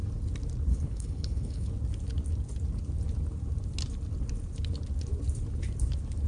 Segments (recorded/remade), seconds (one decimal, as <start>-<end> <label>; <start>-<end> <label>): 0.0-0.7 recorded; 0.7-1.7 remade; 1.7-6.3 recorded